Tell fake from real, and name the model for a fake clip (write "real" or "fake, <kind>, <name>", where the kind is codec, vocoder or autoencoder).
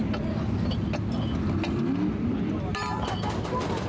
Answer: real